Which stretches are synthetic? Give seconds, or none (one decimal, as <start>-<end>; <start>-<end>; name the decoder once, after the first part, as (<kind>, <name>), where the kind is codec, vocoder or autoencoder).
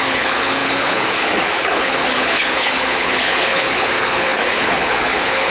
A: 0.0-5.5 (codec, HILCodec)